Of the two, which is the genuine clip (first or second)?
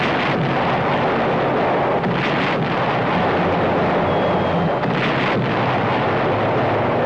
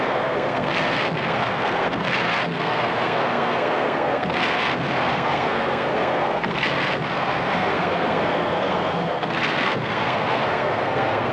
first